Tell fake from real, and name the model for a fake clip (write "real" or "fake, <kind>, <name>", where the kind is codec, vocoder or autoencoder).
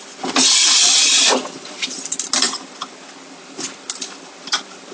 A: real